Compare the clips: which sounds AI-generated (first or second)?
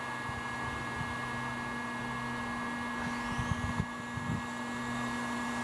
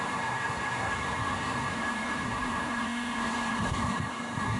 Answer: second